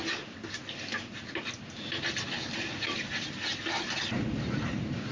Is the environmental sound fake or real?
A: real